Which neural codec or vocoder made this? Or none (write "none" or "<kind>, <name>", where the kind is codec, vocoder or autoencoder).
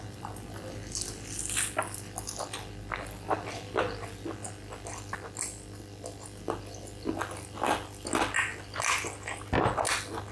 none